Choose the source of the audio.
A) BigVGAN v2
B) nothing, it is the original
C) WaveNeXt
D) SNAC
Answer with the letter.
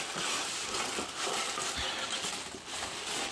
B